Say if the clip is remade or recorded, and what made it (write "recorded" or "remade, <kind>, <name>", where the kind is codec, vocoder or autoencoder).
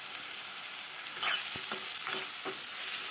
recorded